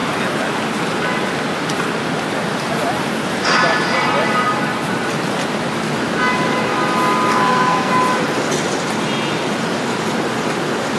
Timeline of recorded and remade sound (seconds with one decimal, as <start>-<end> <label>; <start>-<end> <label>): 0.0-7.3 recorded; 7.3-7.9 remade; 7.9-11.0 recorded